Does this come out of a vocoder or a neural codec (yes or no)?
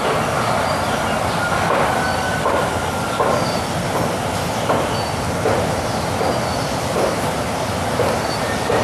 no